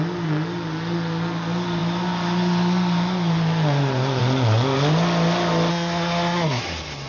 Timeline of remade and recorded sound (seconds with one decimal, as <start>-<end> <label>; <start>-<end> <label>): 0.0-5.7 recorded; 5.7-6.6 remade; 6.6-7.1 recorded